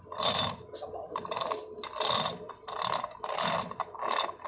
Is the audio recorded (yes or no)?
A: yes